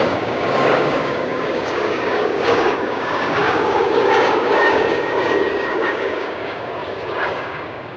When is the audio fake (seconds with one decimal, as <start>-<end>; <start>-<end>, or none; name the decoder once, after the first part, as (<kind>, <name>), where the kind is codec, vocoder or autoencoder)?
0.0-8.0 (codec, DAC)